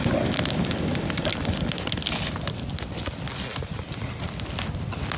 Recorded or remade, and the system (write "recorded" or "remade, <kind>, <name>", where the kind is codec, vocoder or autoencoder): recorded